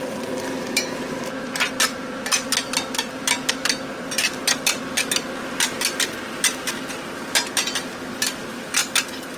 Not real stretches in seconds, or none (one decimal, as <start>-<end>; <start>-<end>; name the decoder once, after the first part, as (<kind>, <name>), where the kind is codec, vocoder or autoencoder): none